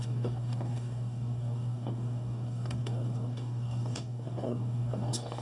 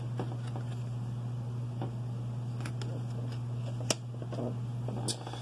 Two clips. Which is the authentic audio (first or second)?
second